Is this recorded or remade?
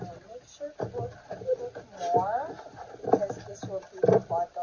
recorded